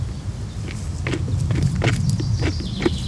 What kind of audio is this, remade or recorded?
recorded